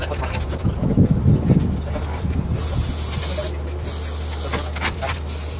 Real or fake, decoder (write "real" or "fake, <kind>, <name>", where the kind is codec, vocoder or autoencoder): real